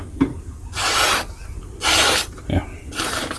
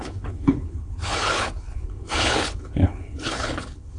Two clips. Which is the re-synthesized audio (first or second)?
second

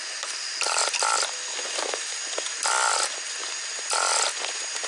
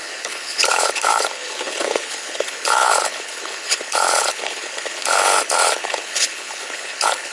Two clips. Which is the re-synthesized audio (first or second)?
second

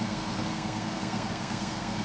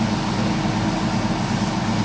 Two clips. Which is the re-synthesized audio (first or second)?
first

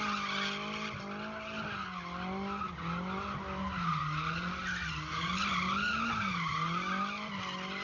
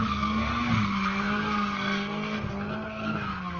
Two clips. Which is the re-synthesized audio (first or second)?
second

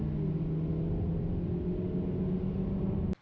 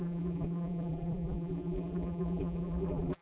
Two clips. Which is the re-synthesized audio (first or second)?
second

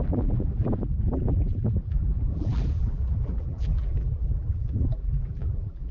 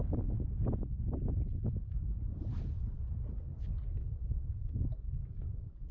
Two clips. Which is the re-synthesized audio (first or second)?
first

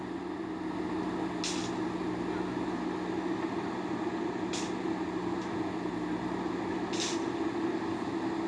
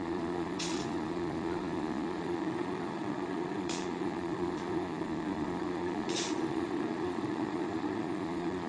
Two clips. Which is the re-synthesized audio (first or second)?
second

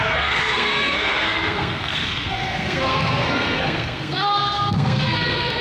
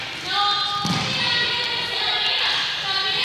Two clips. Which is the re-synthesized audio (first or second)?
first